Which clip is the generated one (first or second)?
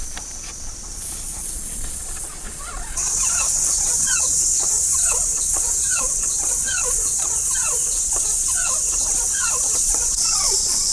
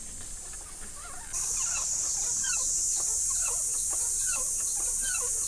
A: first